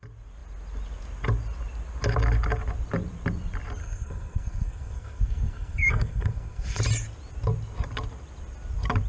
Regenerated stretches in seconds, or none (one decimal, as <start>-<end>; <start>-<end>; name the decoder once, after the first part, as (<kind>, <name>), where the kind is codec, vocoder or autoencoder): 3.8-6.8 (codec, SNAC)